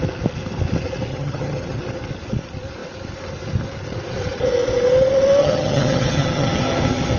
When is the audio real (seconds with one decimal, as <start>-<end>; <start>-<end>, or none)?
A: 0.0-1.1; 1.8-5.4; 6.6-7.2